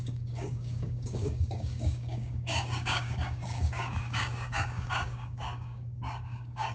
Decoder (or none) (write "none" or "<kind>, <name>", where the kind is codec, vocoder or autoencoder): codec, DAC